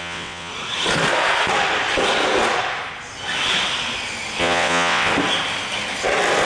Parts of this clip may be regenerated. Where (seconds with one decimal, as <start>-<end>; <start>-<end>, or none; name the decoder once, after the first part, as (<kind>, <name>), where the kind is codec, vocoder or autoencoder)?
0.0-0.5 (vocoder, WaveNeXt); 4.4-5.1